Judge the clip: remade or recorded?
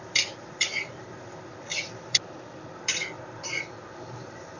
remade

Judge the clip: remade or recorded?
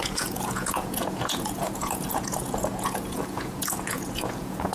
remade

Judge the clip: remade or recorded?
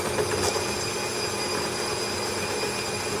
recorded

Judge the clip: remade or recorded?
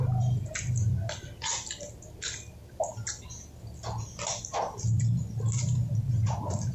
recorded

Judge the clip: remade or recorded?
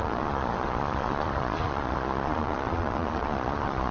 remade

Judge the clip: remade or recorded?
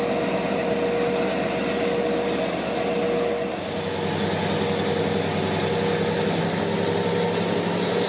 recorded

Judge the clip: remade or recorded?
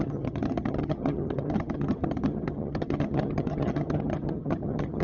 remade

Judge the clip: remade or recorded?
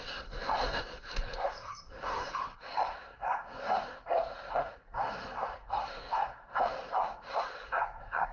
remade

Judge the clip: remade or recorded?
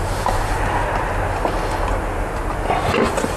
recorded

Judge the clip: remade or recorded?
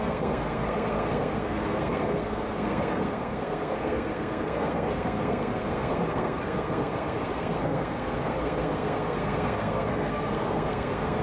remade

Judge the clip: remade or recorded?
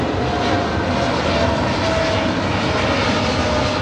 recorded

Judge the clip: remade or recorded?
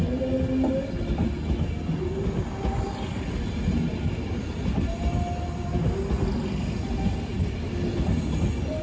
recorded